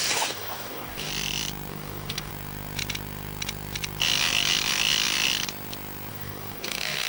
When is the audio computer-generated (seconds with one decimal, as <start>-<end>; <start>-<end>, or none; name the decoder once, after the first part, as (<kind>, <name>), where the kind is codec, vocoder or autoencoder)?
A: 0.0-1.1 (codec, DAC); 1.7-2.3; 6.1-7.1